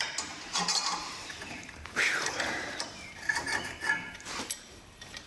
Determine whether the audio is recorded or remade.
remade